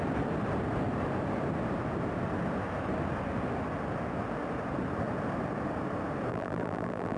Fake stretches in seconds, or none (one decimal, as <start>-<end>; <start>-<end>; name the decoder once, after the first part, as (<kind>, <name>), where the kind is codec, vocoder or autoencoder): 6.3-7.2 (vocoder, BigVGAN v2)